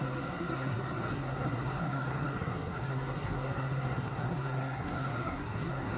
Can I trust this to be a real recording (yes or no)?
no